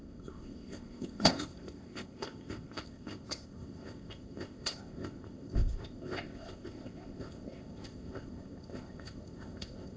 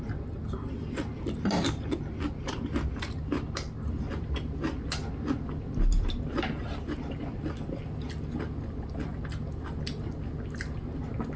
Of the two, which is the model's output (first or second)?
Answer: first